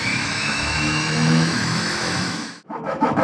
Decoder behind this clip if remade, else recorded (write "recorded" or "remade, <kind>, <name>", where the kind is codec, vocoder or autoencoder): remade, autoencoder, DAC-VAE